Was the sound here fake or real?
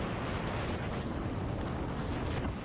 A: real